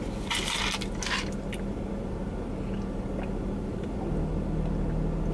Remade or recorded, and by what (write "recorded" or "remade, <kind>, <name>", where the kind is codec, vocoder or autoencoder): recorded